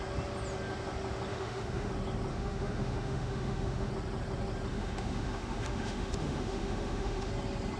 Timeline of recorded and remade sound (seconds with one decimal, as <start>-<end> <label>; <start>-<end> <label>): 0.0-1.3 recorded; 1.3-1.9 remade; 1.9-2.3 recorded; 2.3-3.9 remade; 3.9-4.7 recorded; 4.7-7.3 remade; 7.3-7.8 recorded

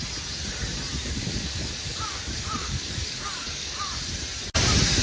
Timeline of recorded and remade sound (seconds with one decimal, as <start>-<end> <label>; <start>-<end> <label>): 0.0-1.0 recorded; 1.0-4.0 remade; 4.0-5.0 recorded

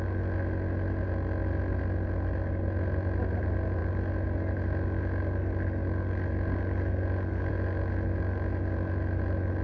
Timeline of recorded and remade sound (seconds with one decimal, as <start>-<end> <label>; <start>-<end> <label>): 0.0-9.6 recorded

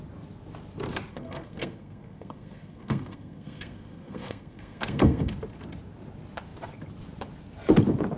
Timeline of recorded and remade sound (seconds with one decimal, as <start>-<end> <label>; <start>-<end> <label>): 0.0-1.1 recorded; 1.1-5.3 remade; 5.3-8.2 recorded